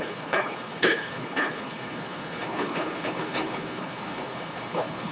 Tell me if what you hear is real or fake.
fake